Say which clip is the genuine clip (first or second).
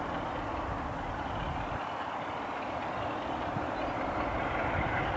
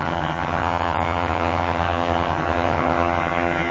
first